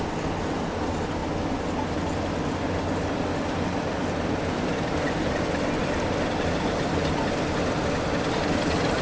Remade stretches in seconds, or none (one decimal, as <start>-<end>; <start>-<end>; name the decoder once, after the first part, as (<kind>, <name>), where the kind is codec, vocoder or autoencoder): none